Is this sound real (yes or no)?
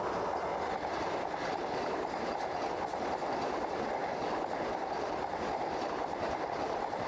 yes